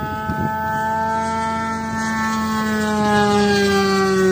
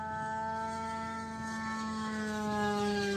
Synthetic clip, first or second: second